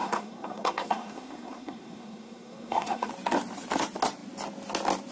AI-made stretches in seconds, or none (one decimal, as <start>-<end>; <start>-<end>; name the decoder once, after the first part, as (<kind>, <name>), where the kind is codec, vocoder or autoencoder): 0.0-3.1 (codec, SNAC)